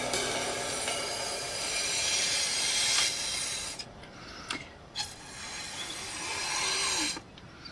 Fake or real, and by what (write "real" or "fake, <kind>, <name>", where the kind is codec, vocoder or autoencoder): real